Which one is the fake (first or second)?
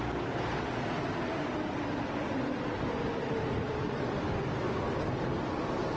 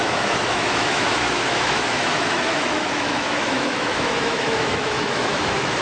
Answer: second